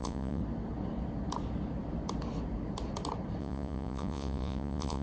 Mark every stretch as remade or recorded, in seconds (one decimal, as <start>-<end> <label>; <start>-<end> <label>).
0.0-0.4 remade; 0.4-3.4 recorded; 3.4-5.0 remade